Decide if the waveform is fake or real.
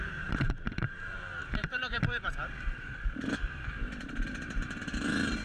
fake